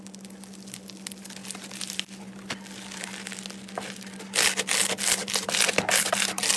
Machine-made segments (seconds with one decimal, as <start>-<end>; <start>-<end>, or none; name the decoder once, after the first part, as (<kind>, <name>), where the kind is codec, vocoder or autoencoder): none